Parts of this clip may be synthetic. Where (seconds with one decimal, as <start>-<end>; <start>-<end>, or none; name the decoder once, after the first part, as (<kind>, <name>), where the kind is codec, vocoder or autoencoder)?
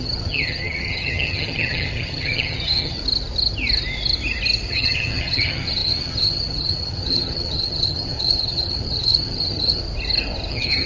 0.0-3.0 (vocoder, HiFi-GAN); 4.7-9.8; 10.5-10.9